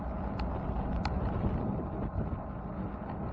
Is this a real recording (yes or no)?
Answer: yes